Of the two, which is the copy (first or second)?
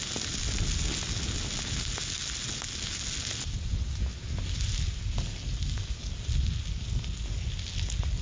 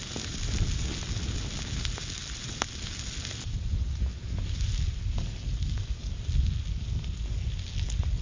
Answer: second